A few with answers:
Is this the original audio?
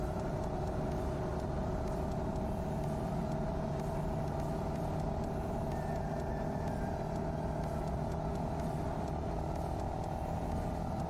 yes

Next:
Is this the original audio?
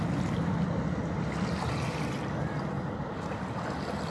yes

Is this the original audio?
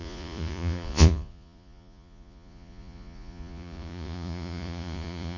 no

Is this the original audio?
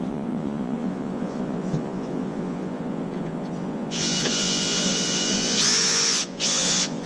no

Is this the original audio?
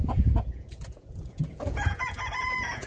no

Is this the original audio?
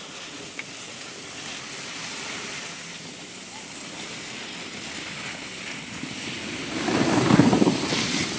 yes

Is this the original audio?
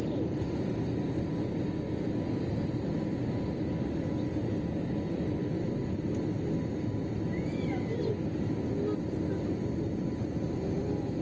yes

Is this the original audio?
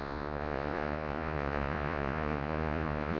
no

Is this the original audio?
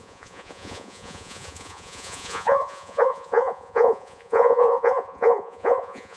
no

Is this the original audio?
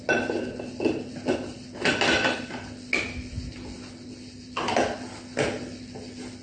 yes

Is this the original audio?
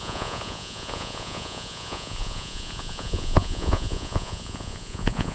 no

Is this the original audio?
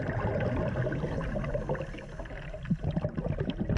yes